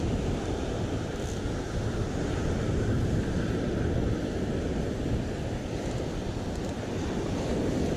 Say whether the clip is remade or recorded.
recorded